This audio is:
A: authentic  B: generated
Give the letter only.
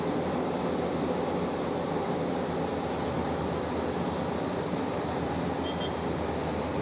A